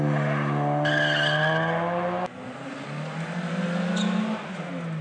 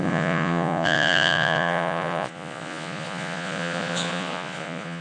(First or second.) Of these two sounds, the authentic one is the first